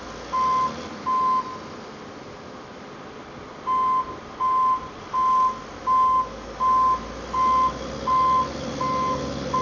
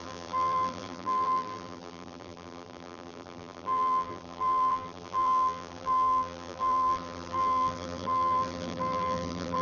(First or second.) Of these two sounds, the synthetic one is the second